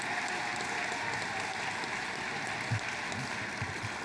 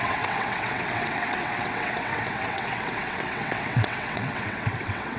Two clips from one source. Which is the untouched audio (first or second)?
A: first